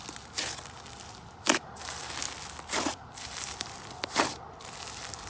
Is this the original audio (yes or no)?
yes